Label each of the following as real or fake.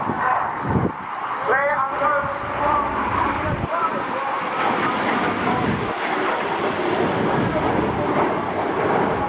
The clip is real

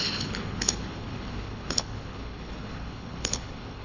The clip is fake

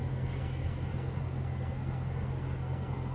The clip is fake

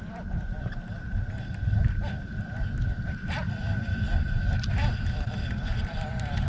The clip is real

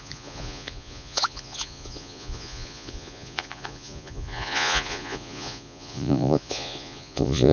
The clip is fake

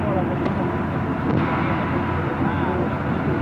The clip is real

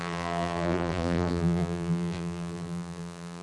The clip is fake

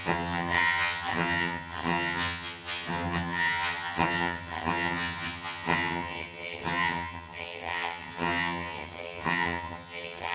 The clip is fake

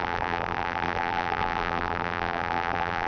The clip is fake